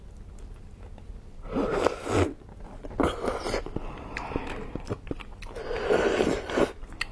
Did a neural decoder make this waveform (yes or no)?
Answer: no